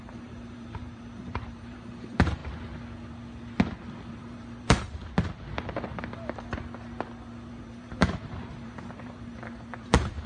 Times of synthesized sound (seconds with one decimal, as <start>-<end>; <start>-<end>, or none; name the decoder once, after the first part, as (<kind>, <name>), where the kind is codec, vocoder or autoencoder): 0.0-2.4 (vocoder, BigVGAN v2); 4.1-5.0; 7.5-10.3